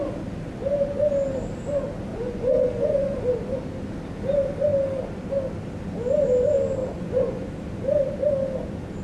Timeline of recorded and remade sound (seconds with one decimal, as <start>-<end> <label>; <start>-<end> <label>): 0.0-2.1 recorded; 2.1-3.2 remade; 3.2-6.8 recorded; 6.8-7.5 remade; 7.5-9.0 recorded